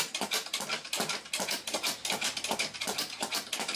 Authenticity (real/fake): real